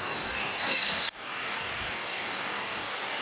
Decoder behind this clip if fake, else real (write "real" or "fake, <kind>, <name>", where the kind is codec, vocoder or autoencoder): fake, codec, DAC